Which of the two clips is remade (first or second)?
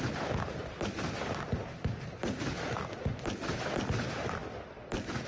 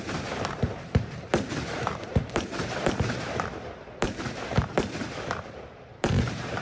second